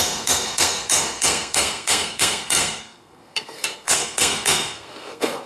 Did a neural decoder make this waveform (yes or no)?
yes